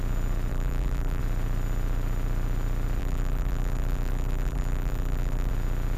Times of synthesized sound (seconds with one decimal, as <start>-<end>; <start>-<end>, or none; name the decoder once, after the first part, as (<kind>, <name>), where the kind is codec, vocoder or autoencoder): 0.5-1.2 (vocoder, BigVGAN v2); 3.0-5.5

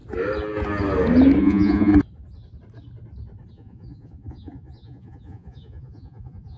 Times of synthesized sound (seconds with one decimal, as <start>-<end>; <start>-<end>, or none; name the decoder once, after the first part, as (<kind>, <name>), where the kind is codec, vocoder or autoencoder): 1.4-1.9 (vocoder, Vocos); 3.5-6.6

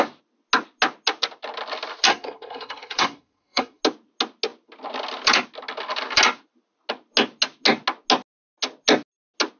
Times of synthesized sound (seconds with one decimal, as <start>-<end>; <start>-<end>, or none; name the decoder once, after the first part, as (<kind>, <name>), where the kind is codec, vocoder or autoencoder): 2.1-3.8 (codec, SNAC)

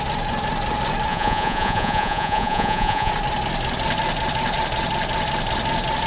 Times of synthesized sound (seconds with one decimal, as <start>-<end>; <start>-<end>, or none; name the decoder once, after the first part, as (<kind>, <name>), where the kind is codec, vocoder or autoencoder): 1.1-3.1 (vocoder, Vocos)

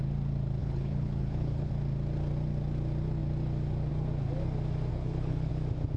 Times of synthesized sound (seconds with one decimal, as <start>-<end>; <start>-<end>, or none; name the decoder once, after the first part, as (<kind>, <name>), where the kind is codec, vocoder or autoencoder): 0.6-1.7 (codec, HILCodec); 4.9-5.5